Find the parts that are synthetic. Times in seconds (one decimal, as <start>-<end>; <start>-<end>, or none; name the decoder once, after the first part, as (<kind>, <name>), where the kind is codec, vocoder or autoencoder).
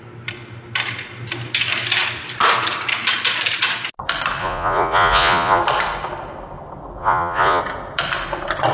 4.4-5.6 (vocoder, Vocos); 7.0-7.6